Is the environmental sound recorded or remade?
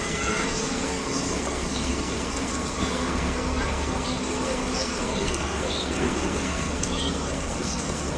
remade